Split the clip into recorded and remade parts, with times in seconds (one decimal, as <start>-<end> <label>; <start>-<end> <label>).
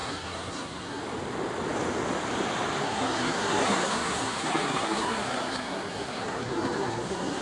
0.0-1.0 remade; 1.0-2.8 recorded; 2.8-7.4 remade